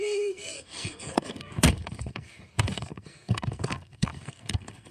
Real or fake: fake